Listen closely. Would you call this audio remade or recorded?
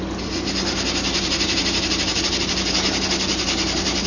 recorded